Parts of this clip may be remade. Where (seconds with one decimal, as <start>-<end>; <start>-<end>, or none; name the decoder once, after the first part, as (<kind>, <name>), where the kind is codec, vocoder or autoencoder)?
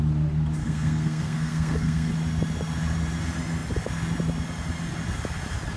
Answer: 0.6-2.1 (codec, SNAC)